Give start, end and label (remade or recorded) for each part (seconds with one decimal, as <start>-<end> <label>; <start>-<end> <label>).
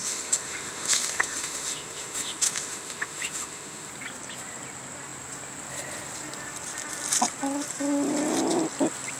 0.0-3.9 remade; 3.9-9.2 recorded